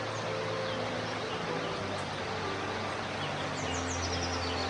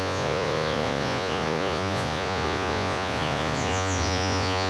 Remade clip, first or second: second